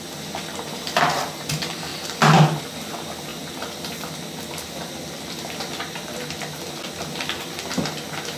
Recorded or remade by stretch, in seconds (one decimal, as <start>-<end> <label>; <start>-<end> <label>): 0.0-8.4 recorded